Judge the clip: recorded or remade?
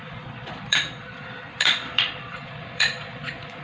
remade